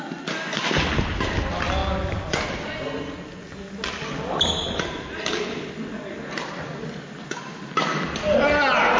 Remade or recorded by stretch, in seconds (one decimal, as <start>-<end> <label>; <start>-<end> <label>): 0.0-9.0 recorded